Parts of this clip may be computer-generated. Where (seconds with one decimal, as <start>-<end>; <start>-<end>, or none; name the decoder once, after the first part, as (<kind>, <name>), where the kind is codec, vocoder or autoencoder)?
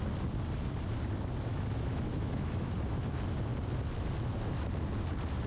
1.5-2.7 (autoencoder, DAC-VAE)